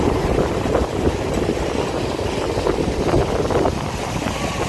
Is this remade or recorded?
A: recorded